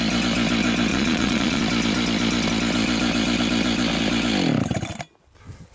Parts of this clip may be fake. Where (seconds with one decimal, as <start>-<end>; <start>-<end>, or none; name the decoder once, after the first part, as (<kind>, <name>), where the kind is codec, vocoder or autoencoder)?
0.9-1.6 (vocoder, Vocos)